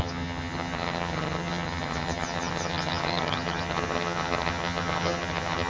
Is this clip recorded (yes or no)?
no